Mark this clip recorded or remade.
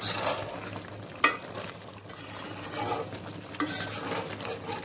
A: recorded